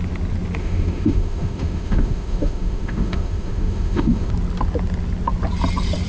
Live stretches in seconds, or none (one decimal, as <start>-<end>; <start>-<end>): 0.0-0.6; 4.3-6.1